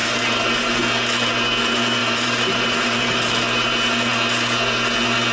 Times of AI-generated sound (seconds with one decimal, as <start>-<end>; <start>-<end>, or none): 0.0-0.8; 2.0-3.3